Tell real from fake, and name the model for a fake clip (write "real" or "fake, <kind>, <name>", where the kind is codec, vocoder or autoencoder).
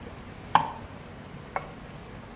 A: real